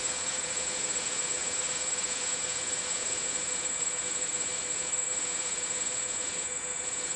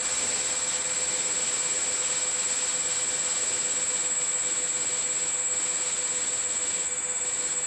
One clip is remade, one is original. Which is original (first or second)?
second